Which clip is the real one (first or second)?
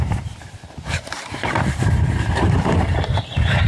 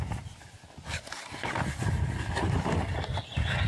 second